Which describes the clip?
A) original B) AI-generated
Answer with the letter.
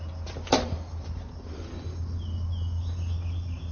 A